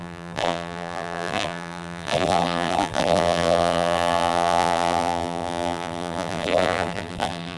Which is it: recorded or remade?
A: remade